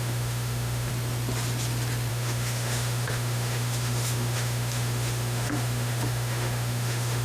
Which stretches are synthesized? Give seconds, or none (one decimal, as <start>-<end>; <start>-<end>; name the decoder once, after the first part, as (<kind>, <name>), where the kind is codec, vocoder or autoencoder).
0.0-0.9 (autoencoder, DAC-VAE); 2.1-7.2